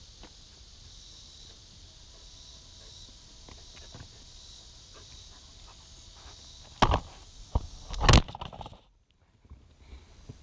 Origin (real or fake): real